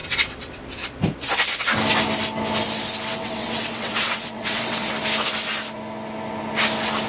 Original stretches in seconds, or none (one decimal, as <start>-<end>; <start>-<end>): 0.6-3.1; 4.9-7.1